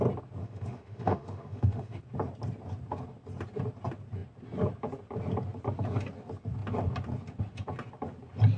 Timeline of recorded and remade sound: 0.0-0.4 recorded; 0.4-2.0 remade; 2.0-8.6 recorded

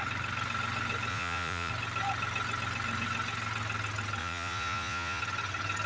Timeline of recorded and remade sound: 0.0-1.1 recorded; 1.1-1.7 remade; 1.7-4.2 recorded; 4.2-5.2 remade; 5.2-5.9 recorded

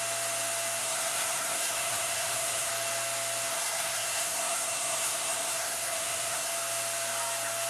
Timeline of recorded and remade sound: 0.0-0.8 recorded; 0.8-2.7 remade; 2.7-3.5 recorded; 3.5-6.5 remade; 6.5-7.7 recorded

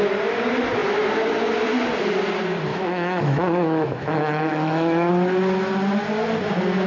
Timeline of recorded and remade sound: 0.0-2.7 recorded; 2.7-5.1 remade; 5.1-6.9 recorded

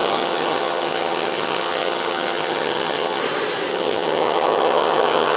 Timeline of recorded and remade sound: 0.0-3.2 remade; 3.2-3.7 recorded; 3.7-5.4 remade

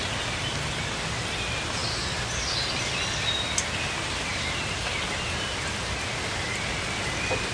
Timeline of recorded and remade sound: 0.0-7.5 recorded

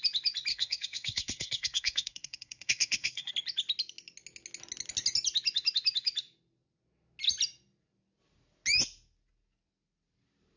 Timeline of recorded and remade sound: 0.0-0.5 recorded; 0.5-3.3 remade; 3.3-10.6 recorded